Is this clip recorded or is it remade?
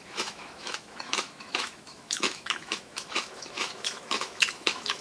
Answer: remade